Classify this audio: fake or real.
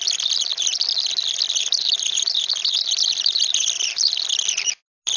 real